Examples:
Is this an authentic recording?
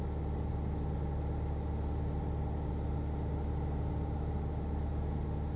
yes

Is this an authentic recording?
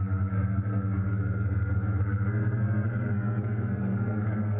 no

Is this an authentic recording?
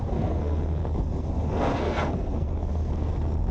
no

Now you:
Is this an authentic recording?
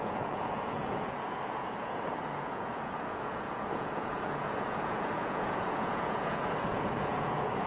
no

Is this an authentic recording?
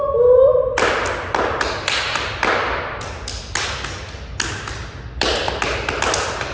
yes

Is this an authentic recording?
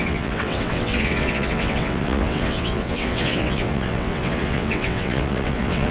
no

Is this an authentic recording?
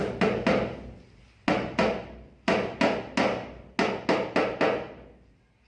yes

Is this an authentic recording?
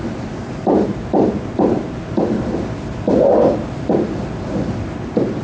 yes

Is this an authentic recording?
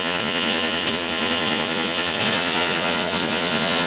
no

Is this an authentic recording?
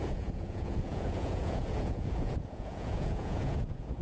no